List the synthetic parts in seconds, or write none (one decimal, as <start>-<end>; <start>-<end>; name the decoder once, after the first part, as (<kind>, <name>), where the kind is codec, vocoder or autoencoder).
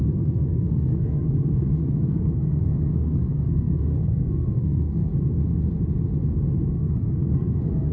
0.0-5.1 (codec, SNAC); 6.7-7.9